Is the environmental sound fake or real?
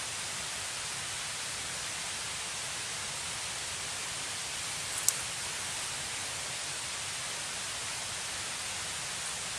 real